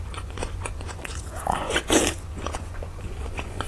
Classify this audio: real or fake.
fake